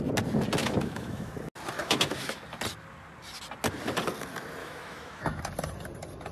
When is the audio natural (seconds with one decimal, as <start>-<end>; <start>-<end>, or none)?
0.0-0.6; 1.3-1.8; 2.4-4.6; 5.4-6.3